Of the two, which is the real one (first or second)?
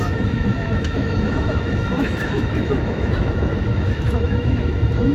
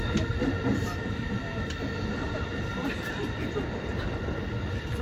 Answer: second